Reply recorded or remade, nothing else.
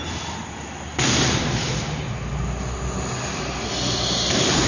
recorded